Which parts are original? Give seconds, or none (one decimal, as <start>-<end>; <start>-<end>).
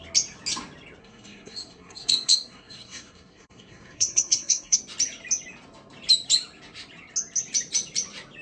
0.0-1.0; 4.8-8.4